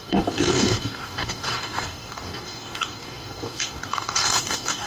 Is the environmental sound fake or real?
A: fake